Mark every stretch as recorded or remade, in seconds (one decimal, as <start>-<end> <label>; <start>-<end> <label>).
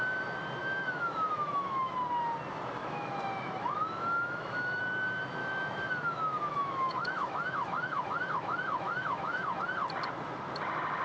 0.0-0.6 recorded; 0.6-1.9 remade; 1.9-2.8 recorded; 2.8-4.8 remade; 4.8-5.4 recorded; 5.4-9.6 remade; 9.6-11.0 recorded